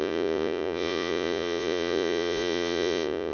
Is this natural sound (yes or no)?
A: no